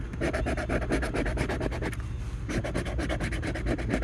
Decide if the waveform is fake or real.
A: real